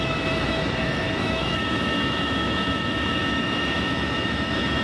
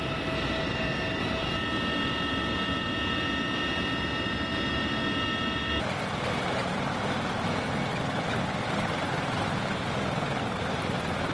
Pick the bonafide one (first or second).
second